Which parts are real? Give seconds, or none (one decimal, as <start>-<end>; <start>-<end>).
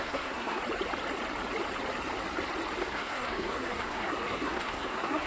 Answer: 0.6-2.8